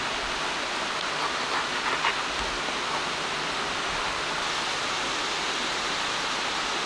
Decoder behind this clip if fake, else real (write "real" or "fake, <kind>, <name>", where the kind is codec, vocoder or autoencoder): real